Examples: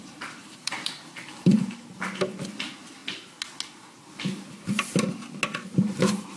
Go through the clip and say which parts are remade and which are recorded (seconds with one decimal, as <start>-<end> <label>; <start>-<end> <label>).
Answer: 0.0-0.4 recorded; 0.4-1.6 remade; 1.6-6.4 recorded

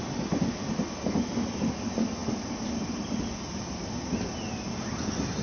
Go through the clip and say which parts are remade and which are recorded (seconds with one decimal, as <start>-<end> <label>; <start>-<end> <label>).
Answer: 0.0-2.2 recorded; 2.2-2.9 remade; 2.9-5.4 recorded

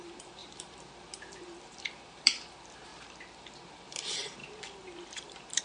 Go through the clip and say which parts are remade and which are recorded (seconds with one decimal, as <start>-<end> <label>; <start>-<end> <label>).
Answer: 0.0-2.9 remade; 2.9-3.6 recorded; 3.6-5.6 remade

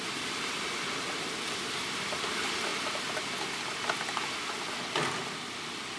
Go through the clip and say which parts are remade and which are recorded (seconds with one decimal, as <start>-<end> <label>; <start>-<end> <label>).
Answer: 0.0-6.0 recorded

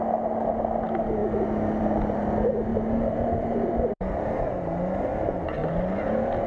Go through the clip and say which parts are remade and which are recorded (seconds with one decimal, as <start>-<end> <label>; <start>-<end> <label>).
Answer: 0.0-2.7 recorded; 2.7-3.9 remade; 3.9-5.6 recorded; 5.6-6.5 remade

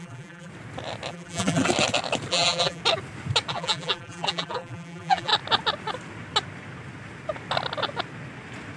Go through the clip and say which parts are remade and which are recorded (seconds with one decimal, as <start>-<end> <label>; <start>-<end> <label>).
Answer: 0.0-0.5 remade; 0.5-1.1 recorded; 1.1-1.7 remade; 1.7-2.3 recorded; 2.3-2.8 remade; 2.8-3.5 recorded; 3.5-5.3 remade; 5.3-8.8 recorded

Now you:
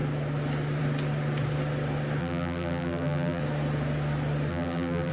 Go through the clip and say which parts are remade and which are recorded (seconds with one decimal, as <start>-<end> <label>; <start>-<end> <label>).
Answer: 0.0-2.2 recorded; 2.2-3.4 remade; 3.4-4.5 recorded; 4.5-5.1 remade

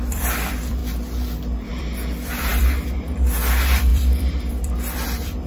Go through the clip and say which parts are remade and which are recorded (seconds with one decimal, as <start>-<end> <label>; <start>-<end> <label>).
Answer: 0.0-0.8 remade; 0.8-1.7 recorded; 1.7-5.5 remade